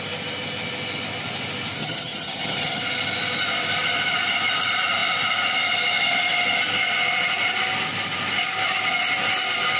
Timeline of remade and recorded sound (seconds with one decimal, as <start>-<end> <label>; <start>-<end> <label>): 0.0-1.8 recorded; 1.8-2.8 remade; 2.8-9.8 recorded

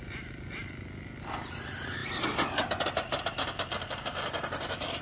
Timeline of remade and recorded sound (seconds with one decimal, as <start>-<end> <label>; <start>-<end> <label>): 0.0-5.0 recorded

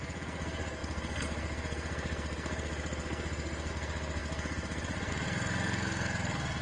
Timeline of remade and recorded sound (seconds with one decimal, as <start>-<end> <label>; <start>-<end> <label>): 0.0-6.6 remade

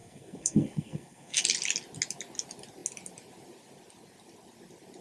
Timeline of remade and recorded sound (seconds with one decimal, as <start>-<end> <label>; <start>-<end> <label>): 0.0-1.4 remade; 1.4-5.0 recorded

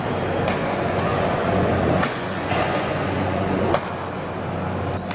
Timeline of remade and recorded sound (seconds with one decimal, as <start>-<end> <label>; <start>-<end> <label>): 0.0-0.6 recorded; 0.6-3.7 remade; 3.7-5.1 recorded

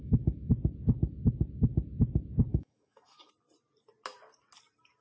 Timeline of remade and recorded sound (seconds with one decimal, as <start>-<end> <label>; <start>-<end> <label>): 0.0-0.5 remade; 0.5-2.5 recorded; 2.5-3.3 remade; 3.3-5.0 recorded

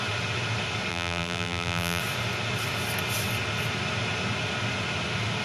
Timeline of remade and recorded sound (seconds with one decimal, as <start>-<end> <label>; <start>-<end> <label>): 0.0-0.9 recorded; 0.9-2.0 remade; 2.0-5.4 recorded